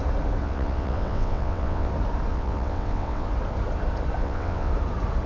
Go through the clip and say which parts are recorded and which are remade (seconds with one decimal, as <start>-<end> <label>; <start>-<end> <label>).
0.0-0.4 recorded; 0.4-1.9 remade; 1.9-2.3 recorded; 2.3-3.3 remade; 3.3-4.2 recorded; 4.2-4.7 remade; 4.7-5.3 recorded

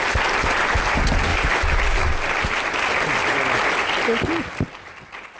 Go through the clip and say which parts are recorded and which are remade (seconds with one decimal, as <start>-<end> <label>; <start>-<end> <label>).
0.0-5.4 recorded